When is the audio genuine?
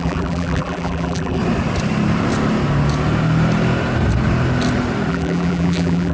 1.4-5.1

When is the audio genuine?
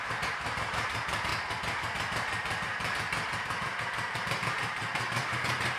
1.3-3.8; 5.2-5.8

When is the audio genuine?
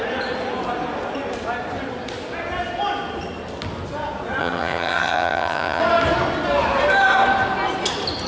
0.0-4.4; 5.8-8.3